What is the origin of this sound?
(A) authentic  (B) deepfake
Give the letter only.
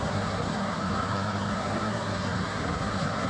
B